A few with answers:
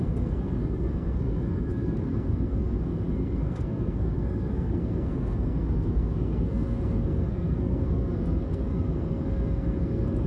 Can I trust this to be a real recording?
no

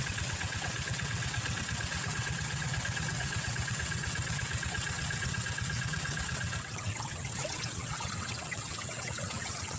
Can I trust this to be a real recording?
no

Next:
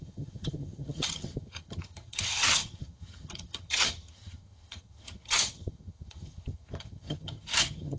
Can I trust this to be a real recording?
no